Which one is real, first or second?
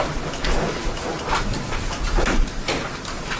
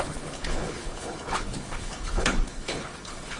first